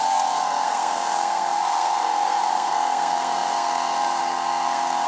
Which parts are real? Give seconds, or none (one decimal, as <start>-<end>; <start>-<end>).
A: none